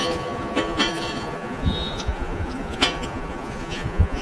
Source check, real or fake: fake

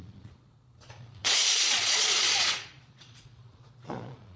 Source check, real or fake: fake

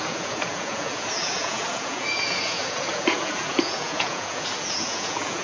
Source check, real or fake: fake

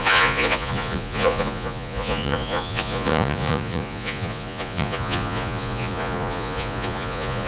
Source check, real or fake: fake